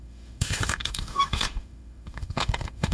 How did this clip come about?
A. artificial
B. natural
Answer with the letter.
A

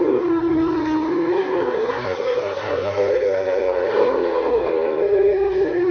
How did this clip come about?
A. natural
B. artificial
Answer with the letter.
B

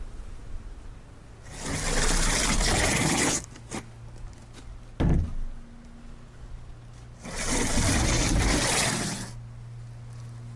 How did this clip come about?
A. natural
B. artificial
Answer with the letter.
A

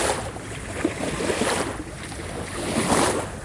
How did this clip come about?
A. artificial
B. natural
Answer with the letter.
B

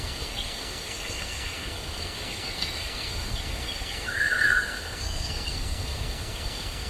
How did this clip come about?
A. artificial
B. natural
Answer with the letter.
A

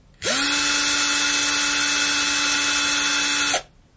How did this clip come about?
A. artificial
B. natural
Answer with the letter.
B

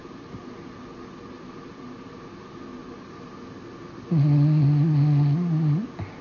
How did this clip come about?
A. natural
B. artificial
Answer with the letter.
A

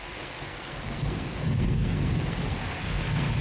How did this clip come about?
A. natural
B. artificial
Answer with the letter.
B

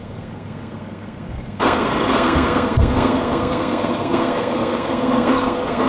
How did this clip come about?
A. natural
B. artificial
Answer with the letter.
B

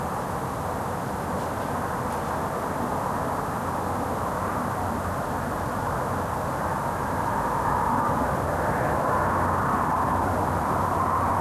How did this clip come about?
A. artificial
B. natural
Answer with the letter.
B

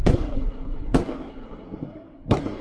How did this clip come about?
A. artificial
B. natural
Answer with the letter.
A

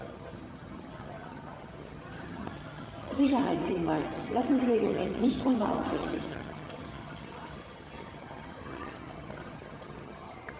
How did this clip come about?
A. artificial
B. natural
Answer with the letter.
A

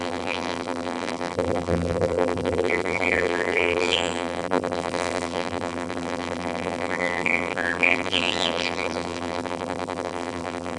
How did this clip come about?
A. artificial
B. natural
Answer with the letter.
A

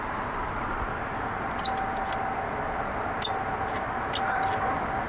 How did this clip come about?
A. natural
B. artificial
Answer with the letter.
A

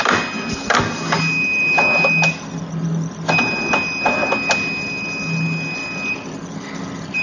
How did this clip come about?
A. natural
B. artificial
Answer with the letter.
A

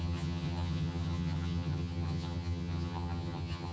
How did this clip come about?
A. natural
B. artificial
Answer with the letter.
B